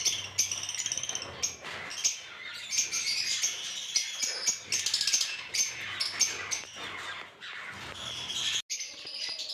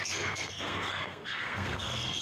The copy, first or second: second